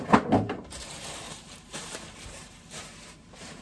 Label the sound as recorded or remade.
remade